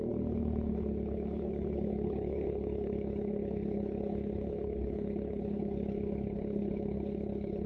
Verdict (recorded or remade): remade